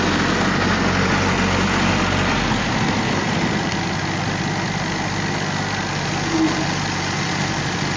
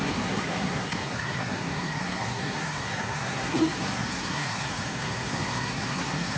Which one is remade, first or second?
second